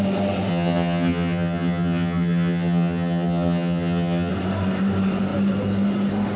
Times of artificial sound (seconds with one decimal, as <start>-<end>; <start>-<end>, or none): 0.5-4.3